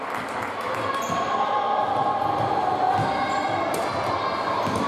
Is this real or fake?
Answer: real